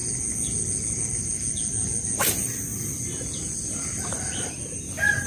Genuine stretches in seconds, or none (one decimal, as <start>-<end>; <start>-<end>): 0.0-2.7; 4.0-5.3